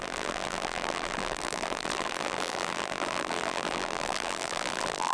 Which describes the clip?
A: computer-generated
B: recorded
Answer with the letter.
A